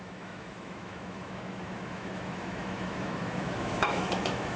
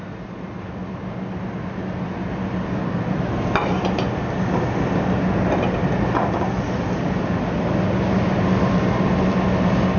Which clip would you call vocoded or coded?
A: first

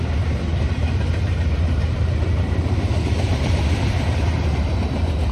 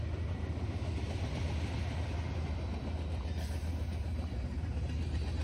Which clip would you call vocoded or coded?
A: first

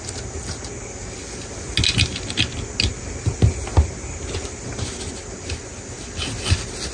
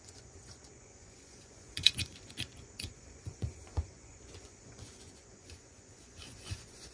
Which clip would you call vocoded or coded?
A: second